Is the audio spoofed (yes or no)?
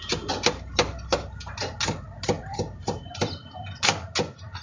no